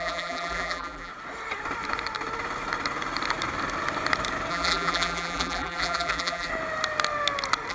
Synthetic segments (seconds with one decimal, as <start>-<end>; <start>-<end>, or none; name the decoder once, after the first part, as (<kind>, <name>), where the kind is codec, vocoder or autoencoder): 0.0-1.1 (vocoder, BigVGAN v2); 4.5-6.5